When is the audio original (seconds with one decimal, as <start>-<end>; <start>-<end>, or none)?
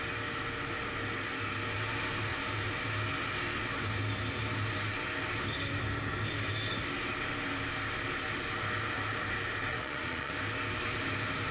0.0-9.7; 10.3-11.5